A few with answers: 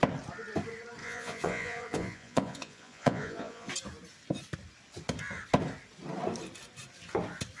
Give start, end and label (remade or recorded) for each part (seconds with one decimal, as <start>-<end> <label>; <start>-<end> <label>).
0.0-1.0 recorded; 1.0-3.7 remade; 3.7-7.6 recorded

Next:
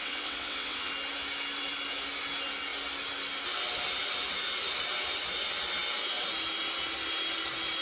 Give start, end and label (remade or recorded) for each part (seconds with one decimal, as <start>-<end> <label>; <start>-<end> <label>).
0.0-0.9 remade; 0.9-7.8 recorded

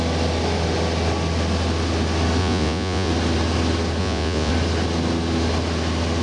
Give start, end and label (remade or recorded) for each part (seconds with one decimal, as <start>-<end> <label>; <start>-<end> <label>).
0.0-2.4 recorded; 2.4-3.1 remade; 3.1-4.0 recorded; 4.0-4.5 remade; 4.5-6.2 recorded

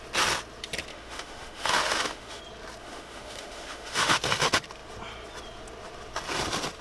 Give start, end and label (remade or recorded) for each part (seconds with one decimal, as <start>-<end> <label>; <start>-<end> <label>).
0.0-0.9 recorded; 0.9-2.4 remade; 2.4-2.8 recorded; 2.8-4.2 remade; 4.2-6.8 recorded

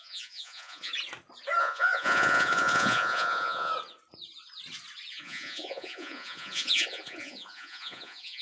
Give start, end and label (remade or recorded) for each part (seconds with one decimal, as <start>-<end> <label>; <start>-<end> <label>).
0.0-0.9 remade; 0.9-1.6 recorded; 1.6-3.7 remade; 3.7-5.1 recorded; 5.1-8.4 remade

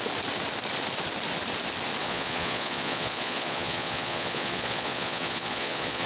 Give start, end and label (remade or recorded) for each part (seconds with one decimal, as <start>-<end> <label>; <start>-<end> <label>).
0.0-2.0 recorded; 2.0-6.1 remade

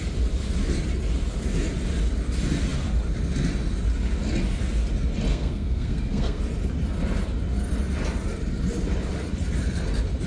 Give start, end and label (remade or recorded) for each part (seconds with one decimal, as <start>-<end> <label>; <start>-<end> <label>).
0.0-5.3 recorded; 5.3-6.4 remade; 6.4-10.3 recorded

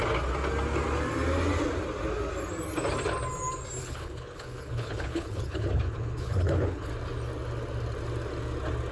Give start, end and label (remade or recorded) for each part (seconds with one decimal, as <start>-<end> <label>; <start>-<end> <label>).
0.0-3.8 recorded; 3.8-6.9 remade; 6.9-8.9 recorded